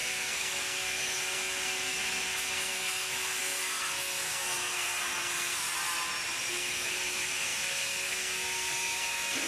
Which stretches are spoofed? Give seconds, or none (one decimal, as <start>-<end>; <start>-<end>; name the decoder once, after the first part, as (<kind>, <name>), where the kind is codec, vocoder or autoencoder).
0.0-5.6 (codec, SNAC); 6.5-9.5